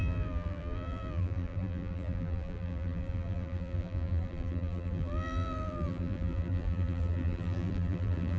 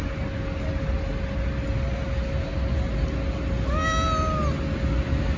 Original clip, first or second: second